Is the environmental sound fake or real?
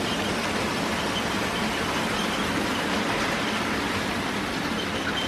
real